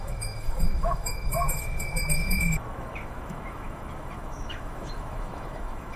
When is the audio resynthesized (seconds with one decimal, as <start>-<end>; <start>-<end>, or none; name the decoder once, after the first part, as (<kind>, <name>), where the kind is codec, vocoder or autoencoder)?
0.0-6.0 (autoencoder, DAC-VAE)